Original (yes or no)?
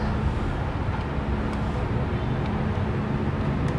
yes